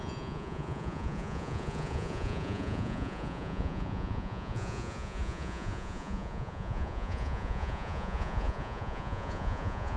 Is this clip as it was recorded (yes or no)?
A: no